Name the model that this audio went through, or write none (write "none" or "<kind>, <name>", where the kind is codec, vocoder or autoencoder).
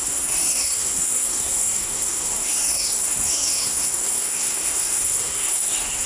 codec, SNAC